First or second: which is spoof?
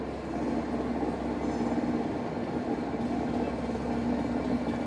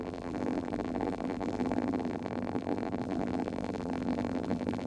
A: second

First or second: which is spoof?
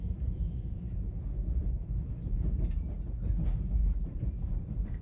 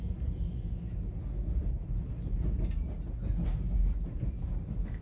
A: first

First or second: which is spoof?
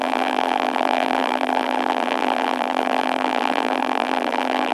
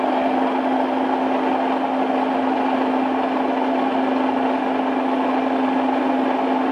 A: first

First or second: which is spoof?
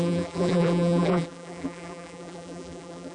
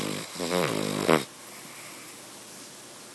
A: first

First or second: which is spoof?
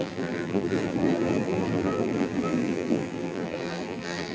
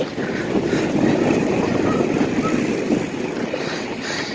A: first